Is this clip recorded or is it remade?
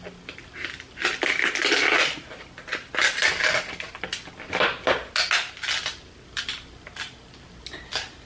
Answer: recorded